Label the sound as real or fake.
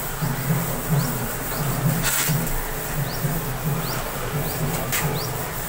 real